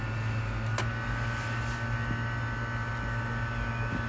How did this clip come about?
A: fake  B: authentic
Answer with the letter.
B